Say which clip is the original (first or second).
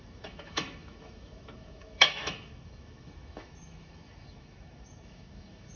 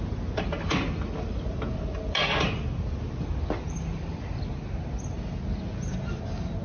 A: second